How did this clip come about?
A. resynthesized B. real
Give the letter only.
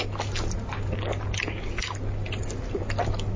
B